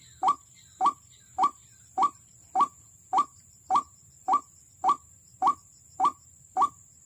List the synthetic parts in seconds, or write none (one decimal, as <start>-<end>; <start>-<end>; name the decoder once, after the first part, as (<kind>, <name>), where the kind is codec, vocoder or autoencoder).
1.6-4.7 (vocoder, BigVGAN v2); 5.4-6.4